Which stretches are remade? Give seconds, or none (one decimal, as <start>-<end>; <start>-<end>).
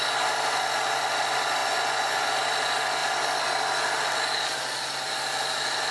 1.6-2.3